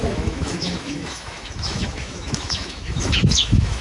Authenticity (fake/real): fake